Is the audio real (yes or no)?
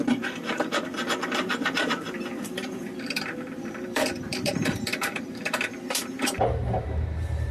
no